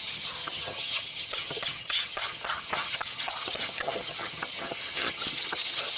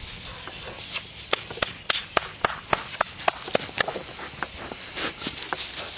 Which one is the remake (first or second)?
first